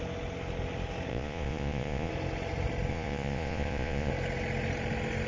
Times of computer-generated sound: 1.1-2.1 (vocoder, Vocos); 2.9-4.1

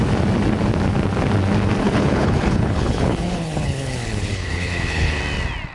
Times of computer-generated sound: 1.8-5.2 (codec, HILCodec)

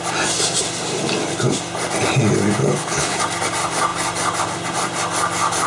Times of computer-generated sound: 2.6-3.2 (codec, HILCodec)